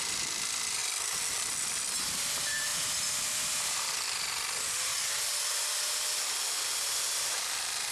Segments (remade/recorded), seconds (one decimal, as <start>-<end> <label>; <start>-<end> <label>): 0.0-0.8 remade; 0.8-2.0 recorded; 2.0-7.9 remade